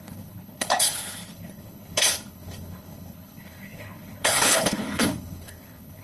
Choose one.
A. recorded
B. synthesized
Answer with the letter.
B